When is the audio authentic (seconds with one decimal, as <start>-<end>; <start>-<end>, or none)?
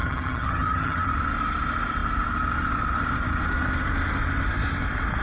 1.1-5.2